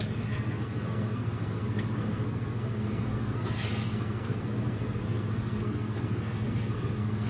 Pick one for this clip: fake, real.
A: fake